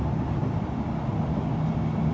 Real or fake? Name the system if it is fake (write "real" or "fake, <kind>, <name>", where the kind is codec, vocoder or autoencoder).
real